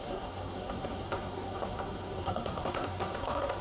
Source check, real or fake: fake